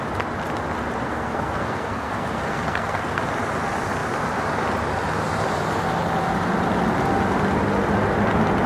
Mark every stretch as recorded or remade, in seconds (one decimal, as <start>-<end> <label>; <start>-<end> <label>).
0.0-1.0 recorded; 1.0-3.2 remade; 3.2-8.7 recorded